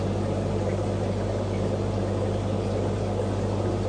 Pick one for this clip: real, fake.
real